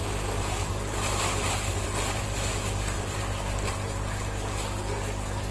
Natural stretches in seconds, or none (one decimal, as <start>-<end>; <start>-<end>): 0.0-5.5

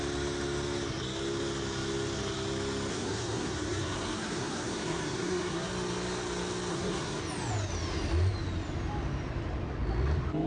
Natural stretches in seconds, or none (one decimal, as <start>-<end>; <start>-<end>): 0.0-2.9; 5.7-6.7; 7.2-10.5